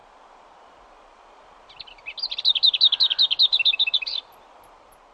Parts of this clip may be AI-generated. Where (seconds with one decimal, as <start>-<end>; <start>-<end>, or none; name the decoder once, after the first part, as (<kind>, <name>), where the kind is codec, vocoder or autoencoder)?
none